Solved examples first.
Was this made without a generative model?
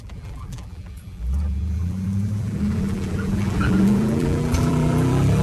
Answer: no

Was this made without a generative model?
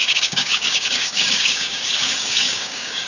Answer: no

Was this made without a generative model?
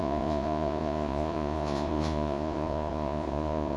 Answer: no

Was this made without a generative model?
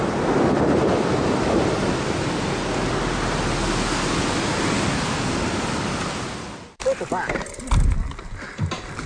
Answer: yes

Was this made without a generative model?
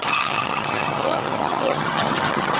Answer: no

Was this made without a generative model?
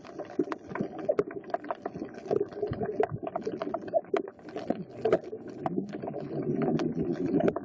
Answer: yes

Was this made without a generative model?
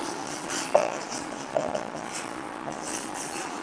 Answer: no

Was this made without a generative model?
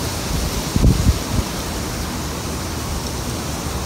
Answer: yes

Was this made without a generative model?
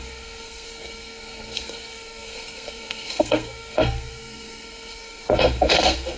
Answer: no